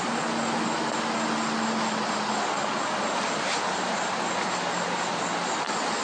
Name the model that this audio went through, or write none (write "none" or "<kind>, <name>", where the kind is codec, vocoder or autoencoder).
none